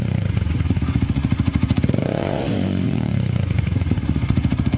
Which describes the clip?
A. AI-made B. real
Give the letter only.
A